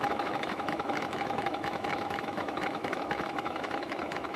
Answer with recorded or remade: remade